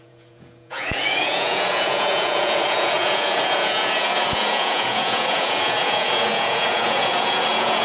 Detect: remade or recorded remade